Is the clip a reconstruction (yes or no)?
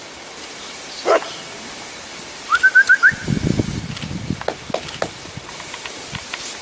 no